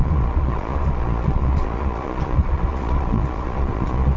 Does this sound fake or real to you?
fake